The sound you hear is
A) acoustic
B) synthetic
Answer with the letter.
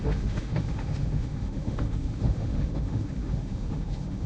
B